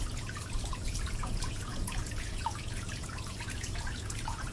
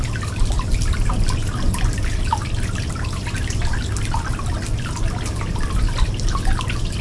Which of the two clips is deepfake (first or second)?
first